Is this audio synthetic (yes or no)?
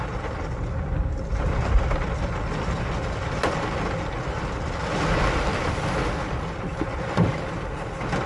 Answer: no